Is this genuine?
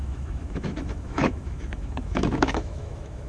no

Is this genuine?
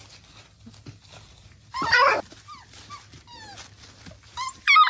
yes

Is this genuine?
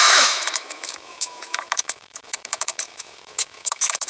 no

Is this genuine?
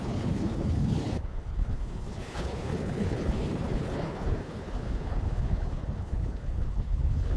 no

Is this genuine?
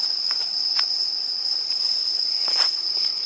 no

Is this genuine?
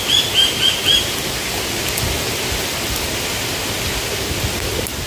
yes